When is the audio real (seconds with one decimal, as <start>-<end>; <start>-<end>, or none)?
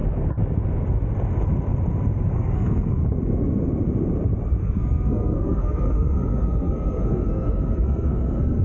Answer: 0.0-2.3; 3.0-4.6